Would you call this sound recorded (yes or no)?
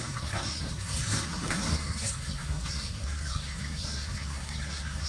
no